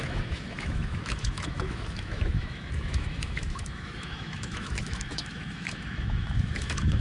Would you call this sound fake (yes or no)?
yes